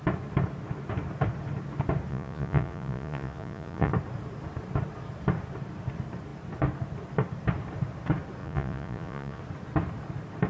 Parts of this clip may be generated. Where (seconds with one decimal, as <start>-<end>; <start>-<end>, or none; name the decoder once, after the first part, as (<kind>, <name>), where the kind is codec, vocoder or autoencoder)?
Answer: 2.1-3.9 (vocoder, Vocos); 8.4-9.4